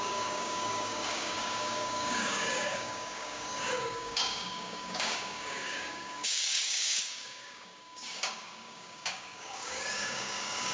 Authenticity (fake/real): fake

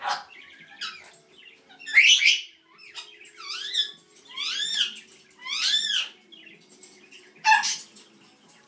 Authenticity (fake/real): real